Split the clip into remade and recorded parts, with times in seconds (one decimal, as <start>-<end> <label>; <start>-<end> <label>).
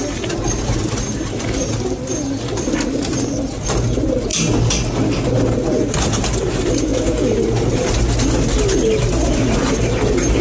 0.0-10.4 recorded